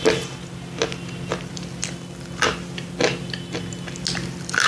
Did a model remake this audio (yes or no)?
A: no